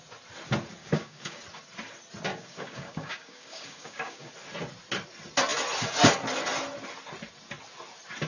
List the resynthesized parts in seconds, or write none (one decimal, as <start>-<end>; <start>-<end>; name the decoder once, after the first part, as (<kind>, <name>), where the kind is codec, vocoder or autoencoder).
0.8-1.4 (codec, DAC); 2.3-4.3